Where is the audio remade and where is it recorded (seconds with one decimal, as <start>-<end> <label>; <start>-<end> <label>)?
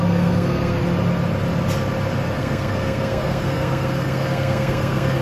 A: 0.0-0.8 remade; 0.8-2.4 recorded; 2.4-5.2 remade